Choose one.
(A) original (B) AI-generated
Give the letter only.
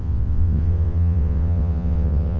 B